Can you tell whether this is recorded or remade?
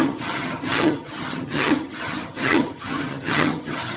remade